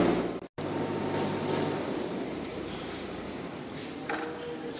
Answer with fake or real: real